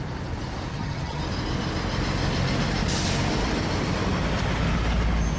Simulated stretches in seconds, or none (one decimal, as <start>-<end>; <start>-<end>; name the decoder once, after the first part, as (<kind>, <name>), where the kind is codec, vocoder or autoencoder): 0.7-1.2 (vocoder, HiFi-GAN)